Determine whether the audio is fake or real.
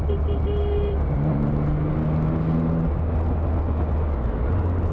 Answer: real